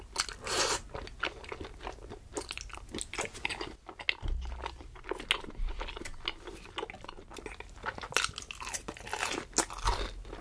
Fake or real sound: real